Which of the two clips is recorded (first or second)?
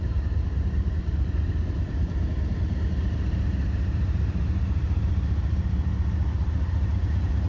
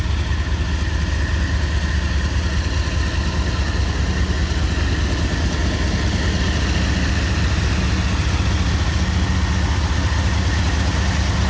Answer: second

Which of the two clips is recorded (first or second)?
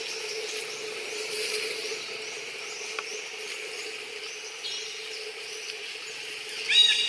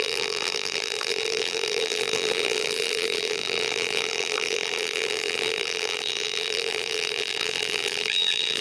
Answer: first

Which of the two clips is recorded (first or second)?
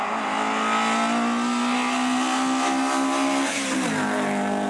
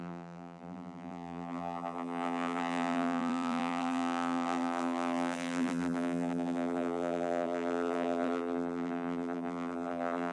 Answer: first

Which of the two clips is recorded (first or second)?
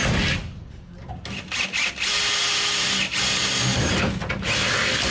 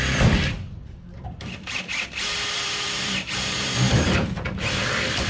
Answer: first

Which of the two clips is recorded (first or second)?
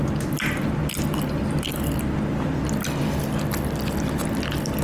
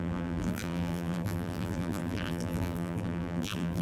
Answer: first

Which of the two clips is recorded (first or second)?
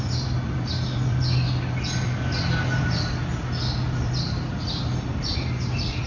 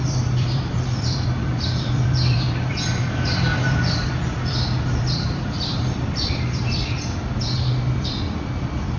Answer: first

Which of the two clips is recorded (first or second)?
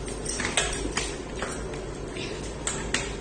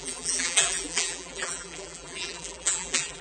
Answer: first